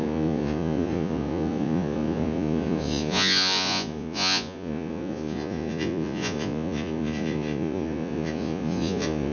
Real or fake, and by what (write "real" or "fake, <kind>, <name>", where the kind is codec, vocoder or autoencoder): fake, vocoder, Vocos